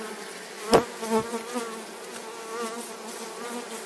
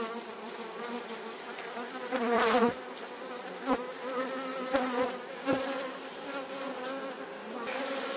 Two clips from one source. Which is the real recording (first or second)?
first